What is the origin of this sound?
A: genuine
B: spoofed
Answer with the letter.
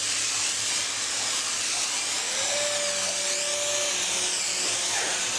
A